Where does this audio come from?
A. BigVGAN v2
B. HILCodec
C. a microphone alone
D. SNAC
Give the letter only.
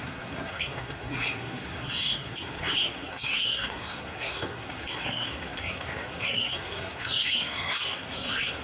D